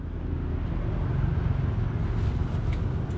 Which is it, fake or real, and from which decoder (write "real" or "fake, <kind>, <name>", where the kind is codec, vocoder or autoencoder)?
real